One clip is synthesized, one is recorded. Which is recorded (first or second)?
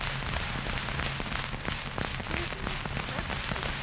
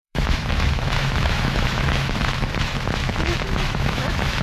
first